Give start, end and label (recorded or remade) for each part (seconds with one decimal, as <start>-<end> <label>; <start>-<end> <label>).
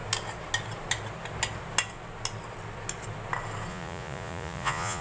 0.0-3.7 recorded; 3.7-5.0 remade